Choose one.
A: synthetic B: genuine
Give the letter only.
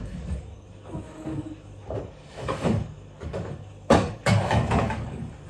A